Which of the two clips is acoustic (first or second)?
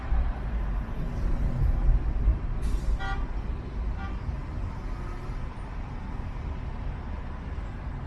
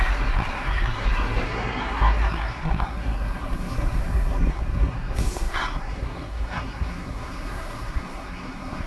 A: first